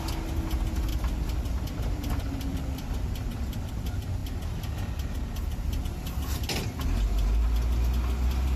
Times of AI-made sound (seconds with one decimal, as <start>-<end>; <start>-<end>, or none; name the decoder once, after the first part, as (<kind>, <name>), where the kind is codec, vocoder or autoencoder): 0.9-3.7 (vocoder, BigVGAN v2)